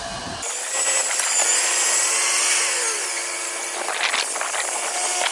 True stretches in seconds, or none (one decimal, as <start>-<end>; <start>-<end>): 0.0-5.3